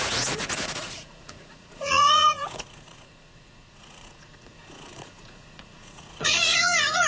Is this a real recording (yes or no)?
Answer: no